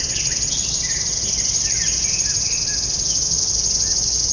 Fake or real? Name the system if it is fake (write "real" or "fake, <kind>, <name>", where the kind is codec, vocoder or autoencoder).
real